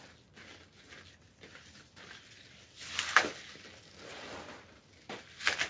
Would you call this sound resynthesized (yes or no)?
no